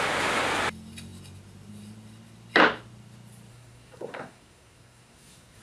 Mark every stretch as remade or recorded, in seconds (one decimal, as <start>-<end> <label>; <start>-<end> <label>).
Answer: 0.0-3.5 recorded; 3.5-5.6 remade